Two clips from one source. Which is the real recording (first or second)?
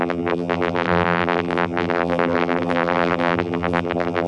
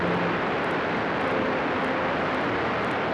second